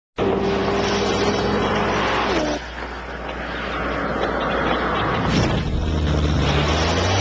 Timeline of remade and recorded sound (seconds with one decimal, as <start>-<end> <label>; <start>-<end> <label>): 0.0-7.2 recorded